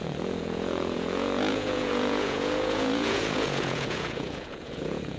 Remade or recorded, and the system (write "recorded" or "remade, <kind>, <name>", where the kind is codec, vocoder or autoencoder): remade, vocoder, Vocos